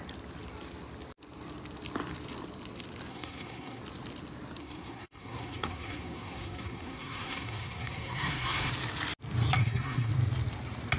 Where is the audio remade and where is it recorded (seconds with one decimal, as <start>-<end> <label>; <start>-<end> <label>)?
0.0-3.1 recorded; 3.1-3.8 remade; 3.8-4.6 recorded; 4.6-8.7 remade; 8.7-9.6 recorded; 9.6-10.1 remade; 10.1-11.0 recorded